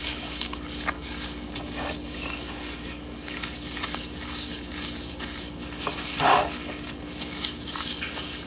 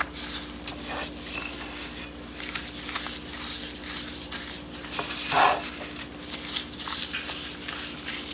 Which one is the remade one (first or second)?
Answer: first